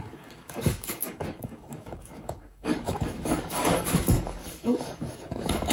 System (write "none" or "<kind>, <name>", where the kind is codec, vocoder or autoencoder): codec, DAC